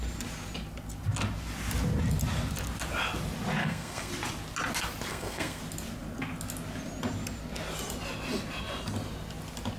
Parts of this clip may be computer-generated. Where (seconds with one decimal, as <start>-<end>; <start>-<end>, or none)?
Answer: 3.6-4.1; 5.1-5.6